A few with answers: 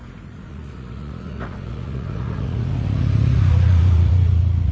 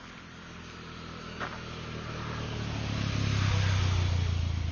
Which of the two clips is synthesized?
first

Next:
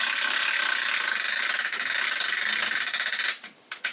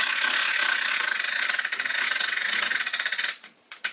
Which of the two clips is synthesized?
second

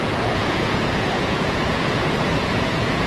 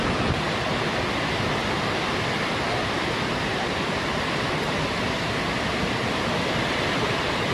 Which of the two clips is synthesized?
first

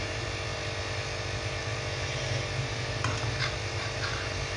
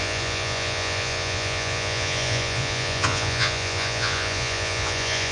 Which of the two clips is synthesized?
second